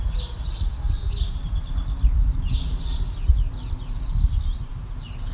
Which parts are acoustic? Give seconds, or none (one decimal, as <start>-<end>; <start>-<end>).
0.0-5.3